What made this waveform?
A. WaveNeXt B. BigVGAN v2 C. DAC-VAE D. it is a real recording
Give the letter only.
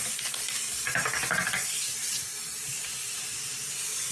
D